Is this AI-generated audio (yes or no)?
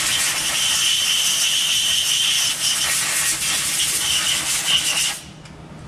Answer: no